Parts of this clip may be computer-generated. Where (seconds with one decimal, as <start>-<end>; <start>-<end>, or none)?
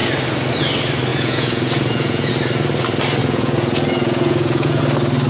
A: 1.1-2.3; 3.2-4.8